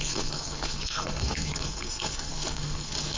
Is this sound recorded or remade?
remade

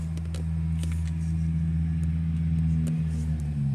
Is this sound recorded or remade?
recorded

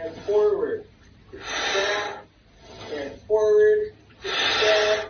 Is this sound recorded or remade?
recorded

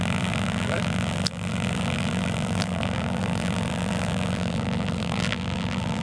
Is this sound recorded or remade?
remade